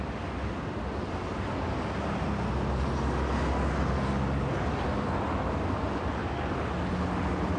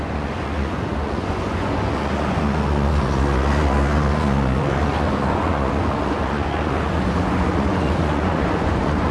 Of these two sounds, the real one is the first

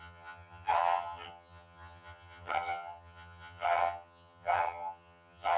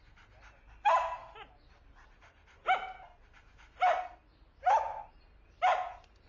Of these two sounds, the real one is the second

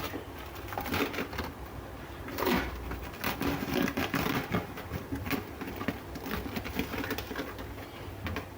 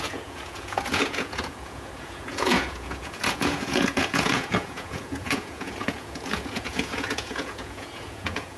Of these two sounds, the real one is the first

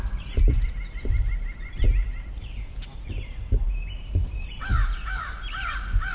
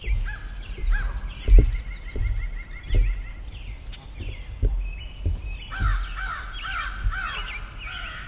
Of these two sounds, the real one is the second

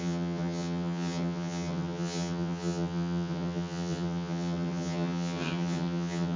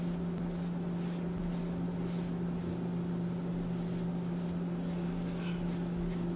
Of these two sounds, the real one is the second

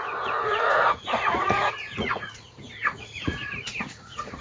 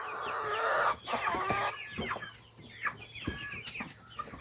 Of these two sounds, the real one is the second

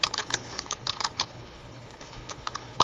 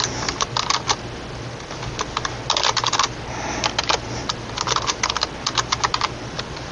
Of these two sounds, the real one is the second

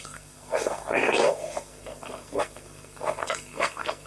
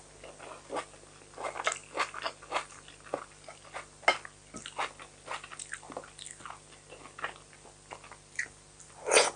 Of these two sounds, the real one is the second